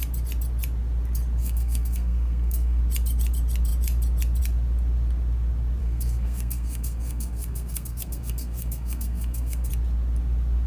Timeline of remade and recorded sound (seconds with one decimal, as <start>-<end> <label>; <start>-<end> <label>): 0.0-1.4 recorded; 1.4-2.8 remade; 2.8-5.8 recorded; 5.8-9.7 remade; 9.7-10.7 recorded